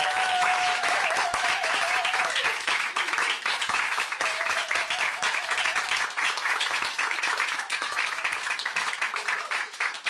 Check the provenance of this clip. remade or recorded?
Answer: remade